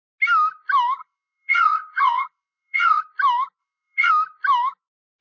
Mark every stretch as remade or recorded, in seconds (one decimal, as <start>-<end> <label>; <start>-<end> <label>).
0.0-1.0 recorded; 1.0-3.0 remade; 3.0-3.6 recorded; 3.6-4.1 remade; 4.1-5.2 recorded